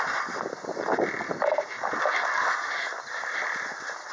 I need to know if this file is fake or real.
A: real